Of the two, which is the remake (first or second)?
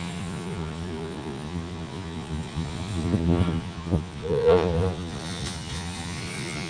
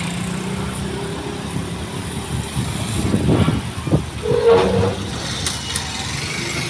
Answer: first